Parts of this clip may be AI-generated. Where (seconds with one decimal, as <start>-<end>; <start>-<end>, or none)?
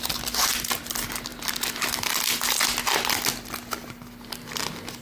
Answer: none